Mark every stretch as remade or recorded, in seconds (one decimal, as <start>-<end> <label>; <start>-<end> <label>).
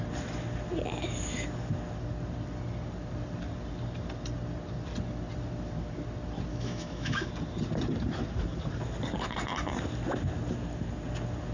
0.0-6.5 recorded; 6.5-7.3 remade; 7.3-11.5 recorded